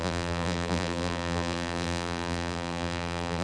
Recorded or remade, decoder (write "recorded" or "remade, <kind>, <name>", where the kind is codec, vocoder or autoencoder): remade, vocoder, BigVGAN v2